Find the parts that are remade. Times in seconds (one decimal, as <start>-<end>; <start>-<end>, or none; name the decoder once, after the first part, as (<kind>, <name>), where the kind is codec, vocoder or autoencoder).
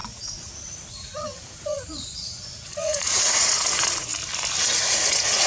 0.0-4.1 (vocoder, Vocos); 4.6-5.5